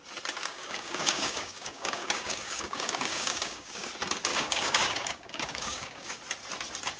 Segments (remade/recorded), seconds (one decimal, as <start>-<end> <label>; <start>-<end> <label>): 0.0-0.4 recorded; 0.4-3.9 remade; 3.9-4.3 recorded; 4.3-6.2 remade; 6.2-7.0 recorded